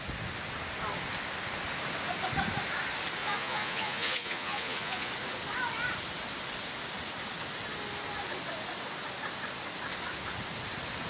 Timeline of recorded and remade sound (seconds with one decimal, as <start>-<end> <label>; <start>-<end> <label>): 0.0-3.2 recorded; 3.2-5.1 remade; 5.1-11.1 recorded

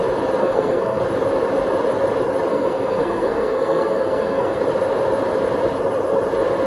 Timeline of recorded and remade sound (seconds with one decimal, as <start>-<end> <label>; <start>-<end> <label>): 0.0-0.4 recorded; 0.4-1.0 remade; 1.0-2.5 recorded; 2.5-4.6 remade; 4.6-6.7 recorded

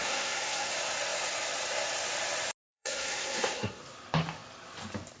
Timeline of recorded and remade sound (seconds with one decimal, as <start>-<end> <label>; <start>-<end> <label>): 0.0-0.7 remade; 0.7-2.7 recorded; 2.7-3.8 remade; 3.8-5.2 recorded

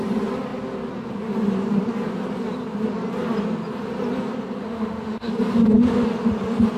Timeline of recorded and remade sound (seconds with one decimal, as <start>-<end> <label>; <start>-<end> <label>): 0.0-4.6 recorded; 4.6-5.3 remade; 5.3-6.8 recorded